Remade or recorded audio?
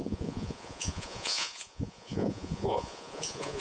remade